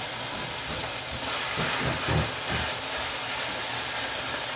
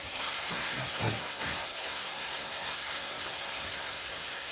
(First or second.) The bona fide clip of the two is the first